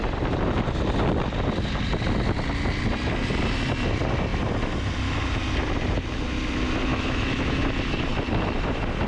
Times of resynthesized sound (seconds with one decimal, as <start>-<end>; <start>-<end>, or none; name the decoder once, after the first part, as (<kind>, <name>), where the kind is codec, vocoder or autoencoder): 6.9-7.6 (autoencoder, DAC-VAE)